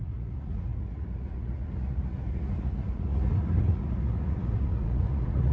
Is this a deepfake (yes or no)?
yes